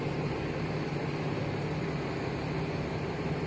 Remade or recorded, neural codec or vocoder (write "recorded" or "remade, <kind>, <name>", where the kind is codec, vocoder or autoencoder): recorded